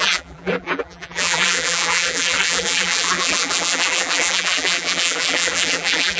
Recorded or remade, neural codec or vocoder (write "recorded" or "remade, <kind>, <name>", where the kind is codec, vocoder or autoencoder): remade, vocoder, BigVGAN v2